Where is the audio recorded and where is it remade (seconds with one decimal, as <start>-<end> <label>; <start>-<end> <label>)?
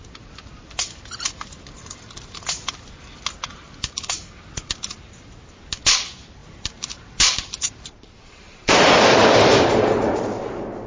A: 0.0-3.5 recorded; 3.5-4.4 remade; 4.4-6.4 recorded; 6.4-10.2 remade; 10.2-10.9 recorded